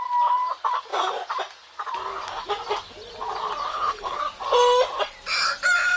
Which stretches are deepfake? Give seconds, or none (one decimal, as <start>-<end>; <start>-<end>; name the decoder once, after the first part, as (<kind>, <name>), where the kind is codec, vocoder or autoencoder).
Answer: 3.7-4.2 (codec, HILCodec)